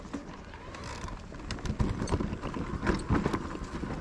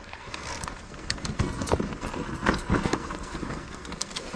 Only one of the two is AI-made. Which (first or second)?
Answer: second